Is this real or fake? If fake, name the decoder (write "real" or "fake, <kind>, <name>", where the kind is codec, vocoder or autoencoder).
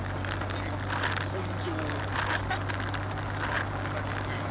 real